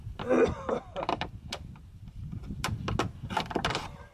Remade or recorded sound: recorded